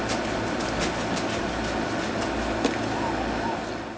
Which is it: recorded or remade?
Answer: recorded